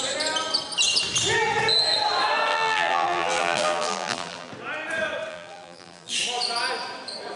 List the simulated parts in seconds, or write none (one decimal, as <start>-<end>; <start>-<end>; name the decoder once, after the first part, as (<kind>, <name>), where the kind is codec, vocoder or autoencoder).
2.5-4.5 (vocoder, BigVGAN v2); 5.3-6.1